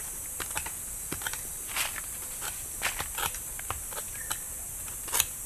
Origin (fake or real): real